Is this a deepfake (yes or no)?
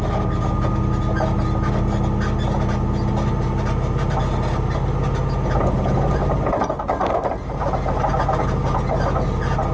no